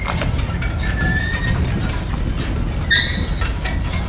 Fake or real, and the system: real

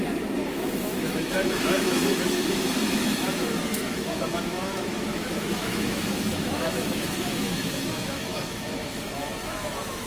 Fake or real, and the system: fake, autoencoder, DAC-VAE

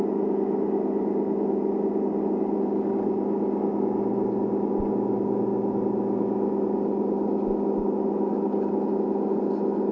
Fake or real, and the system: real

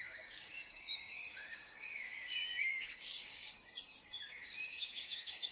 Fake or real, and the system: fake, codec, DAC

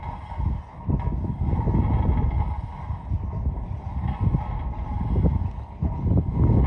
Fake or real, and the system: real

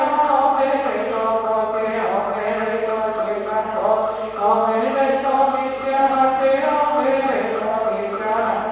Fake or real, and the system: real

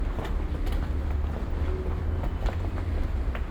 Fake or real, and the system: real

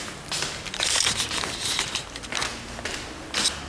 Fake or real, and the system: real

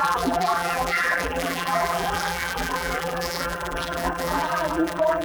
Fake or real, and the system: fake, vocoder, BigVGAN v2